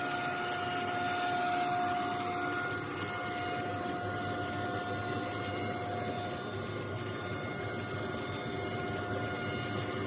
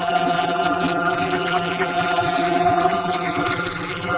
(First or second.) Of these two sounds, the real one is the first